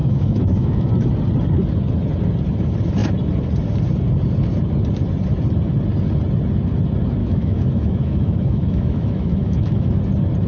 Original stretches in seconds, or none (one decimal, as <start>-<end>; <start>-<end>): 0.9-7.2; 10.0-10.5